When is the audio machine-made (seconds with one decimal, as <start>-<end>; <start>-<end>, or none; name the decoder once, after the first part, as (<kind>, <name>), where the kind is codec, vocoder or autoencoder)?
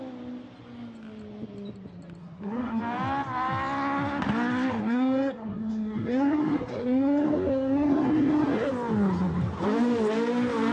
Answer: 2.2-2.8 (codec, SNAC); 4.8-8.7